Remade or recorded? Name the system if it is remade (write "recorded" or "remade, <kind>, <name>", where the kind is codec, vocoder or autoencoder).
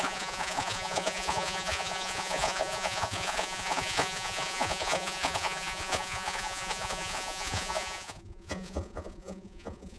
remade, vocoder, Vocos